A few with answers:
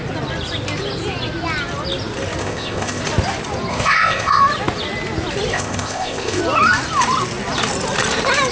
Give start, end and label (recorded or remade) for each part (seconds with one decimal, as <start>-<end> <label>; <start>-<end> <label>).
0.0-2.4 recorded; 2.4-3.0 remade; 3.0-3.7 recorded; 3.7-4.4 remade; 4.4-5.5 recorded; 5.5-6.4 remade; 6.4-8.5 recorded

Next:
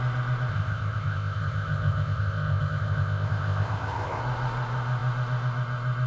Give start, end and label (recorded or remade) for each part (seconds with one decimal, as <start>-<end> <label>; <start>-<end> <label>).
0.0-0.5 recorded; 0.5-4.2 remade; 4.2-6.1 recorded

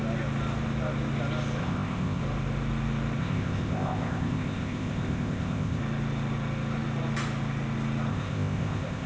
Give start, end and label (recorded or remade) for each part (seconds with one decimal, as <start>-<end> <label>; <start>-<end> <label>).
0.0-1.6 recorded; 1.6-2.2 remade; 2.2-3.2 recorded; 3.2-5.8 remade; 5.8-8.1 recorded; 8.1-9.1 remade

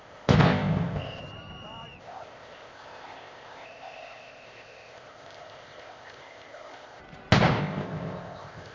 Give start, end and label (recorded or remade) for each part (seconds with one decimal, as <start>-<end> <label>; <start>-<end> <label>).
0.0-1.2 remade; 1.2-2.0 recorded; 2.0-7.0 remade; 7.0-7.6 recorded; 7.6-8.7 remade